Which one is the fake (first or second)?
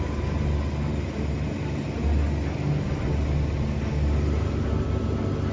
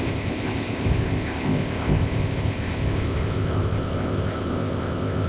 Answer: second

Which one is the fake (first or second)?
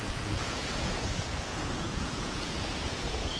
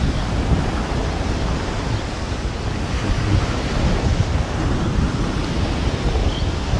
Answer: first